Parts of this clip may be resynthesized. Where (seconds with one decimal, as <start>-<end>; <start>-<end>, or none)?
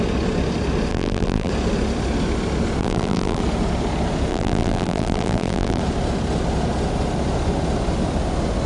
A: 0.9-1.5; 2.8-3.4; 4.3-5.8